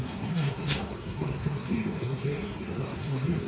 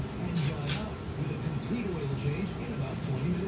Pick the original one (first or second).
second